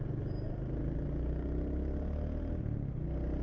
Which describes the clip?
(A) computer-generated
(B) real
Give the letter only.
B